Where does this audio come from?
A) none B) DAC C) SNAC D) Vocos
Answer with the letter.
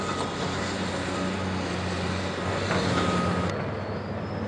A